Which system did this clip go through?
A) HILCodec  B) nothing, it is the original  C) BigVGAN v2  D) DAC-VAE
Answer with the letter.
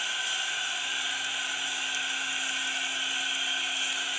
B